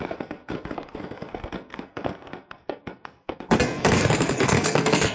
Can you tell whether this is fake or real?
fake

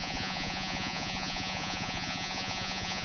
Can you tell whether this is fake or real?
fake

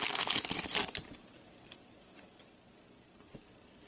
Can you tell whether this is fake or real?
real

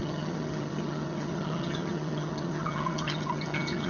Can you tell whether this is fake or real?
fake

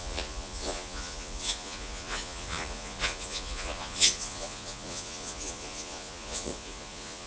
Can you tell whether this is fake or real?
fake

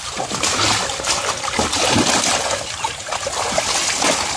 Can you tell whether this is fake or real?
real